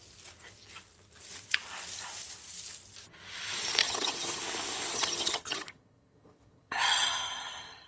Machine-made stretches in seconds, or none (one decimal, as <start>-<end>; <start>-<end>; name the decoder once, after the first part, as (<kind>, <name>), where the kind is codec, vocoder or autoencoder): 3.8-4.4 (vocoder, HiFi-GAN); 4.9-7.9